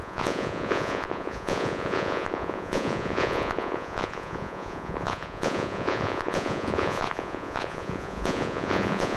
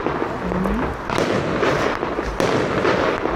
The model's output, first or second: first